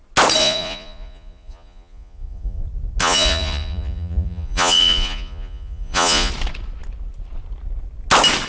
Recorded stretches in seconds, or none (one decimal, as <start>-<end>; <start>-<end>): 0.0-0.4; 2.6-3.0; 6.3-8.5